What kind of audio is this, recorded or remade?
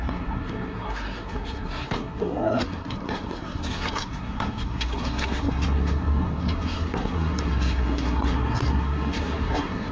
remade